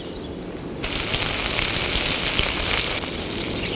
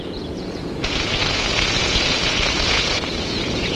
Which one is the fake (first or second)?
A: second